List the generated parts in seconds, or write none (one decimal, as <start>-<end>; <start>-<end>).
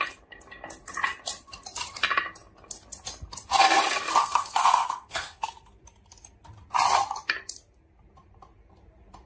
4.2-5.8